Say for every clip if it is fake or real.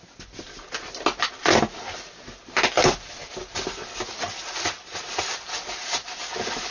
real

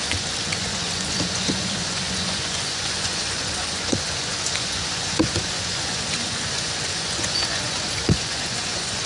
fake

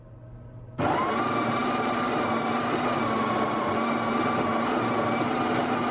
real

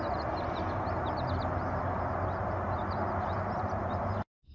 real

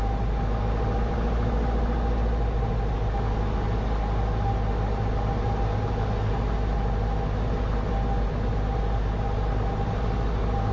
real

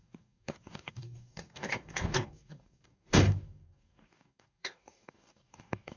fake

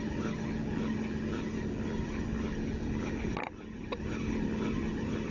real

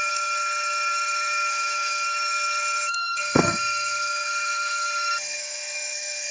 fake